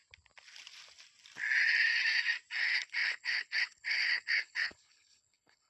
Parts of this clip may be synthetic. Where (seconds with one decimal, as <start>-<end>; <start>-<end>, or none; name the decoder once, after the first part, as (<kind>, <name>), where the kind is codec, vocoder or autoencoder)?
2.6-5.7 (codec, HILCodec)